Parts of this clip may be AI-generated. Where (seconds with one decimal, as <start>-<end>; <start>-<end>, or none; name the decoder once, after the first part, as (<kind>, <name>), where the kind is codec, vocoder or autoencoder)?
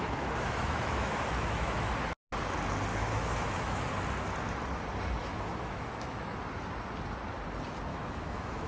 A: 0.0-1.9 (autoencoder, DAC-VAE); 2.9-3.9; 5.2-6.4; 7.9-8.7